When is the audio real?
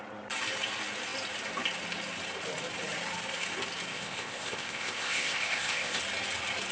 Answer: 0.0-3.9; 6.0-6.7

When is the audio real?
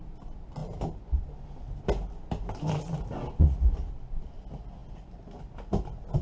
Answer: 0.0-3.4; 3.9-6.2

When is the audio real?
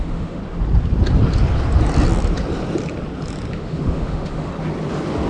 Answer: 0.4-3.5; 4.5-5.3